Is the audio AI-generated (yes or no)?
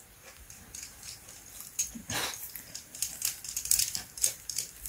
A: yes